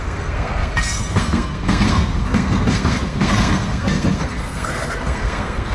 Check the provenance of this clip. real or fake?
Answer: fake